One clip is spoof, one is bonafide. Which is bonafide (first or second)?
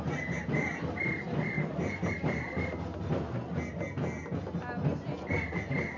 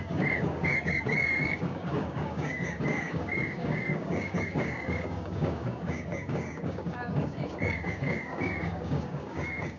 first